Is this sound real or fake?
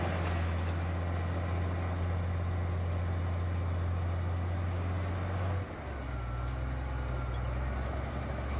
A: real